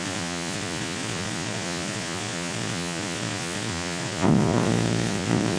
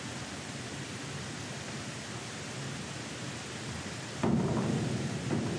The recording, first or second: second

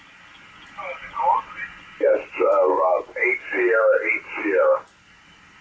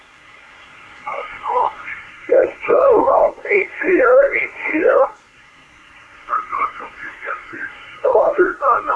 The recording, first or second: first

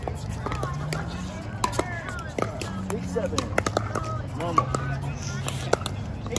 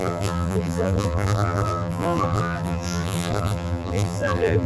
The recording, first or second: first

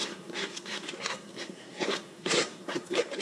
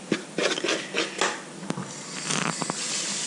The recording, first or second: second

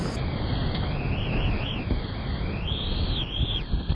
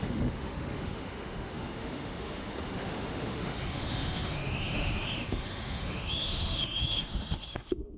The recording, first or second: first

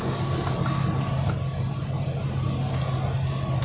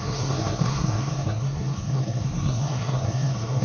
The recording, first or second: first